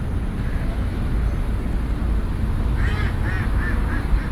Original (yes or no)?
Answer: yes